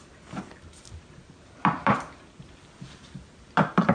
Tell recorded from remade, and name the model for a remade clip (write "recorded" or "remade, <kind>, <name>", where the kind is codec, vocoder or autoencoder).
remade, vocoder, BigVGAN v2